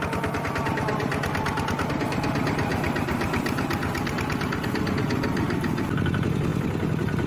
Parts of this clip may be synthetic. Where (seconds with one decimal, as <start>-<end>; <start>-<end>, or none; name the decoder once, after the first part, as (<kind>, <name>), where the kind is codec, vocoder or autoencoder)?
2.7-4.9 (vocoder, BigVGAN v2)